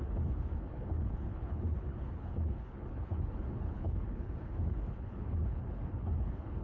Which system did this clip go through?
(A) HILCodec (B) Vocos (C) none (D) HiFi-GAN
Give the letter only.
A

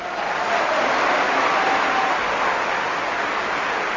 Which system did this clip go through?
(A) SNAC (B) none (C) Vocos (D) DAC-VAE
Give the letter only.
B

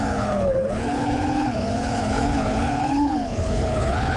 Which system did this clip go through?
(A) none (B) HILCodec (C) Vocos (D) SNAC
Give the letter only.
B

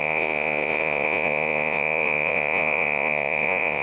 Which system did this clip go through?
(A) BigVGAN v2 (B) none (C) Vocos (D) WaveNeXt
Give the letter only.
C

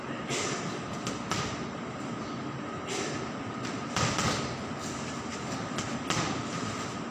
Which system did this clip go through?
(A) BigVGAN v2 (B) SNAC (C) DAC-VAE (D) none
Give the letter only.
D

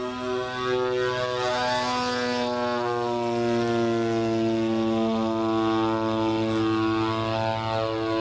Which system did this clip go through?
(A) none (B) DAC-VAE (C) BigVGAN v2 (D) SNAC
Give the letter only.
A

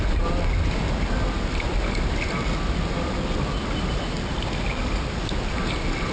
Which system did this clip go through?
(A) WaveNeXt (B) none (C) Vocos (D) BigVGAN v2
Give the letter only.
B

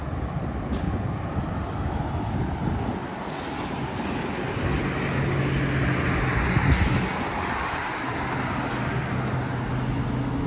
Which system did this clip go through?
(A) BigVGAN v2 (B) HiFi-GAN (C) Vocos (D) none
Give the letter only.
D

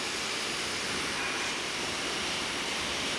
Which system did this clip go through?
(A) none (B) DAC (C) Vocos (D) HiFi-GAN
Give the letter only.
A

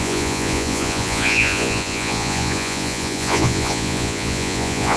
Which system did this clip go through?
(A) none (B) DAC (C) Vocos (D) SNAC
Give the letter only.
C